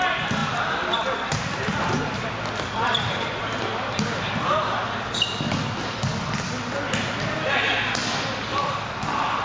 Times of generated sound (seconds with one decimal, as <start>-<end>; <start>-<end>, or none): 0.4-5.5; 8.0-9.0